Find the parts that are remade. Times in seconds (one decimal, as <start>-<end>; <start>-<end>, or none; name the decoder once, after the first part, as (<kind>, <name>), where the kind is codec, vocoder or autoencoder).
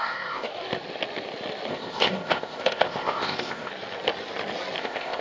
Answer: 0.0-0.5 (codec, ZipCodec); 1.7-3.7; 4.8-5.2